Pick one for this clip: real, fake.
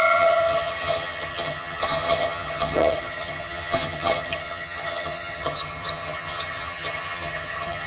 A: fake